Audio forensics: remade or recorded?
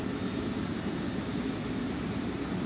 recorded